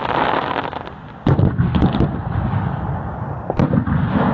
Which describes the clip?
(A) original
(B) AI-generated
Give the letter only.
A